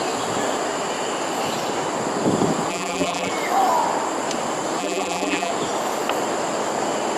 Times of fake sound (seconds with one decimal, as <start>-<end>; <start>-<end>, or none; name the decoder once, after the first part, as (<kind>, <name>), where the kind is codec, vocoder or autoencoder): 2.7-3.3 (vocoder, BigVGAN v2); 4.8-5.5